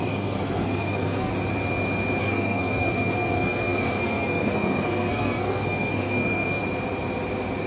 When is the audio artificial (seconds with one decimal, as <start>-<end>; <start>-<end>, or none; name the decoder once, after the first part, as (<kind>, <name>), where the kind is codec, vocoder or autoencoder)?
0.0-1.3 (codec, SNAC); 2.2-6.6